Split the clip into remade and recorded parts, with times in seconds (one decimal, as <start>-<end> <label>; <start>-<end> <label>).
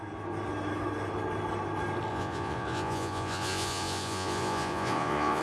0.0-2.1 recorded; 2.1-5.4 remade